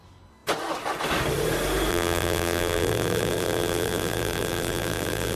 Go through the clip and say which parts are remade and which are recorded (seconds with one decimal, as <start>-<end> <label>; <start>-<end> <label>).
0.0-1.9 recorded; 1.9-5.4 remade